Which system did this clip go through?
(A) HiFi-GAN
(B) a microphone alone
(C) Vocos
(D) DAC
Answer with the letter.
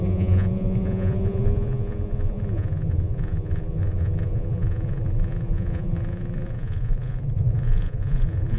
C